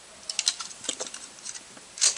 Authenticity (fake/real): real